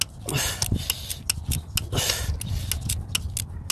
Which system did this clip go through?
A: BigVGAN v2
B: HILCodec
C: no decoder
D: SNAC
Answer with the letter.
C